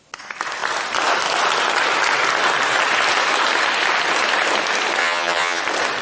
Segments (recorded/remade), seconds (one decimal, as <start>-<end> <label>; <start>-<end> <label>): 0.0-5.0 recorded; 5.0-5.6 remade; 5.6-6.0 recorded